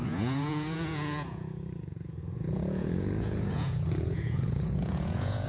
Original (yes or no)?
no